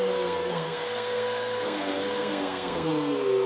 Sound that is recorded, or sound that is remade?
remade